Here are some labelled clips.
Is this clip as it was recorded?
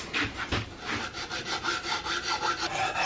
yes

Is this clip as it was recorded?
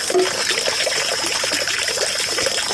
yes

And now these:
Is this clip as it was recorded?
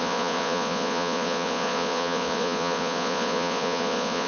no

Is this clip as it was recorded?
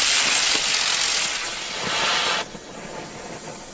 yes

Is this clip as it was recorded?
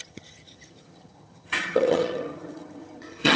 no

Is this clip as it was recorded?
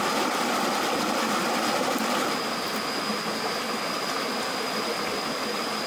yes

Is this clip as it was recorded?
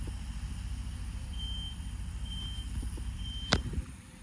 no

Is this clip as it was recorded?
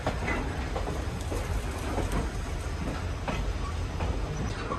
yes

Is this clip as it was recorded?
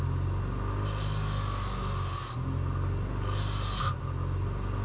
yes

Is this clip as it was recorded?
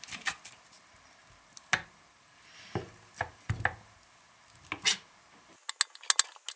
yes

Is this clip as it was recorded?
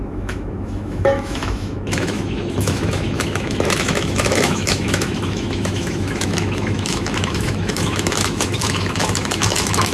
no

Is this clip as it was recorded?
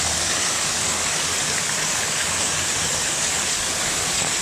no